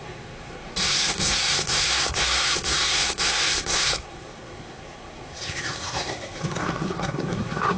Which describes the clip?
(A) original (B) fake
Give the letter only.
B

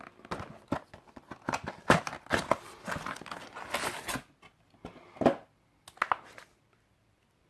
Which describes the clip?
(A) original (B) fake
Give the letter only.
A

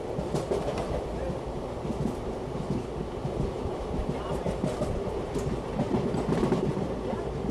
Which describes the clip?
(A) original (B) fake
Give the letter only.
A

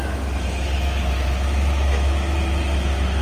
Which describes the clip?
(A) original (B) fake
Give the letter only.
B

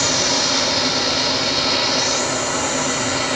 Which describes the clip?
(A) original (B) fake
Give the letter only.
A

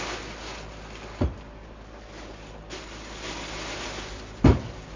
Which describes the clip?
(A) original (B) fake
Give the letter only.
A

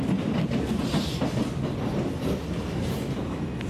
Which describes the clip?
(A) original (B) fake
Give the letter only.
A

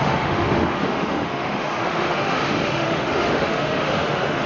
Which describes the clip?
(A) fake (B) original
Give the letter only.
A